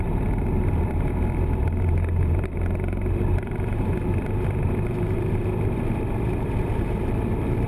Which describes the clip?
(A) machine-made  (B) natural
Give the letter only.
A